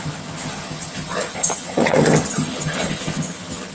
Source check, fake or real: fake